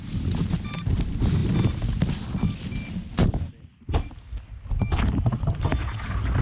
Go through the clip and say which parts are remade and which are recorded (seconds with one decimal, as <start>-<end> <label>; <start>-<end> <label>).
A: 0.0-6.4 recorded